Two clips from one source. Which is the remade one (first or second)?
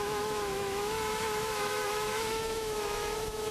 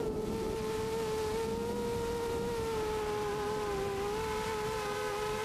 first